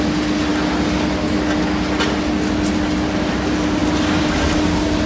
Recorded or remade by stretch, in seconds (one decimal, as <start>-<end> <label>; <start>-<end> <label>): 0.0-5.1 recorded